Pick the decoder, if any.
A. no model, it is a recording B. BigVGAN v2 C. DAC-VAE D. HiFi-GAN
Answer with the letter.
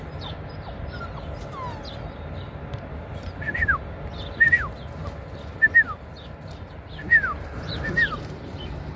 A